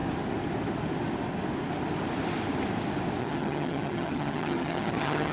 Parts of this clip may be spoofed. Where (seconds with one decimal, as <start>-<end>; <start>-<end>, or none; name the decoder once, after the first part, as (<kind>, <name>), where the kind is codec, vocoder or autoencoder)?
3.2-5.3 (vocoder, HiFi-GAN)